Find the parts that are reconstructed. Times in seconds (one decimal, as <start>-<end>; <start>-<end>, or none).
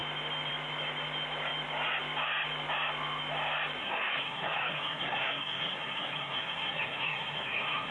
3.8-7.9